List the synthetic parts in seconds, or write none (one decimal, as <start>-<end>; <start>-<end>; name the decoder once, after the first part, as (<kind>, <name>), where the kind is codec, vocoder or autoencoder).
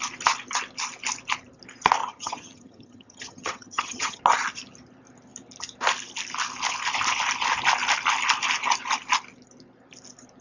2.0-4.2 (vocoder, HiFi-GAN)